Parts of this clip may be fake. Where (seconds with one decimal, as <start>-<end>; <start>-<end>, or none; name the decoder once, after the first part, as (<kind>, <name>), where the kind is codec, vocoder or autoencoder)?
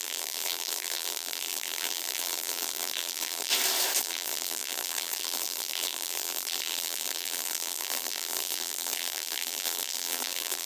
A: 0.0-3.5 (vocoder, BigVGAN v2); 4.0-10.7